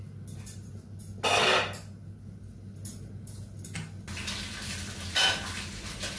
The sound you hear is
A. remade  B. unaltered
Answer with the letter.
B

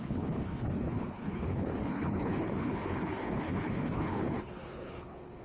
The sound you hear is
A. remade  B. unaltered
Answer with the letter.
A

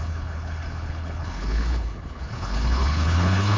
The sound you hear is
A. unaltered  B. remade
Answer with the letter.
B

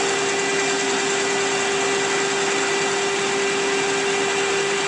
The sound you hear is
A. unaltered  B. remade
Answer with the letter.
A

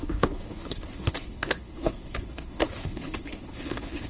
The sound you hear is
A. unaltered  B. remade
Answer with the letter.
B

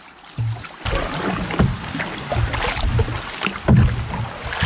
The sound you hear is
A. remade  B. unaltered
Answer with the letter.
B